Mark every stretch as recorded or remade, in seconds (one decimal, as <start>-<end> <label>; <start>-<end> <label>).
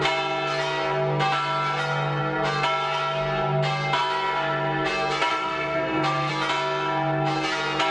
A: 0.0-5.3 recorded; 5.3-6.3 remade; 6.3-7.9 recorded